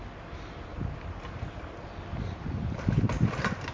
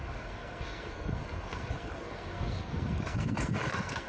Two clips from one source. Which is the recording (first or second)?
first